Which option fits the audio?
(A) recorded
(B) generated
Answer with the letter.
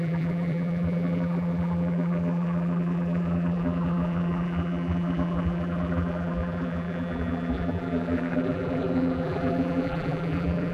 B